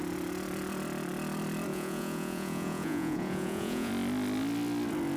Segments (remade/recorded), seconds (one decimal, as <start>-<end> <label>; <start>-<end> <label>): 0.0-1.7 recorded; 1.7-3.9 remade; 3.9-5.2 recorded